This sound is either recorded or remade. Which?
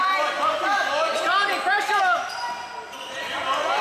recorded